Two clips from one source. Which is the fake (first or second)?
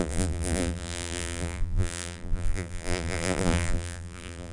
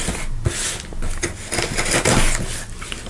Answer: first